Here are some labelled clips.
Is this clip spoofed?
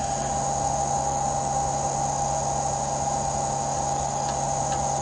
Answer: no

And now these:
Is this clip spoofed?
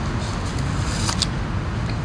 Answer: no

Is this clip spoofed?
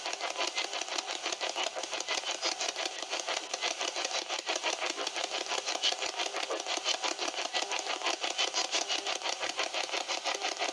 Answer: no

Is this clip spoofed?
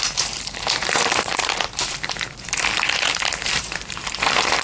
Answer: yes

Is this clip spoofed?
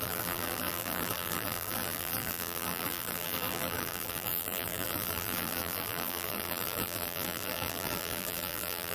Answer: yes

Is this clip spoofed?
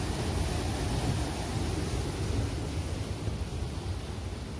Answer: no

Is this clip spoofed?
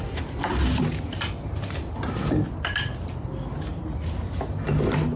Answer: no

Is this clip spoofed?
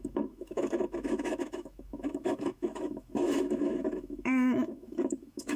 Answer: yes